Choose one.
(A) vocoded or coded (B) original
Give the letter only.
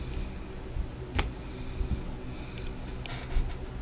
B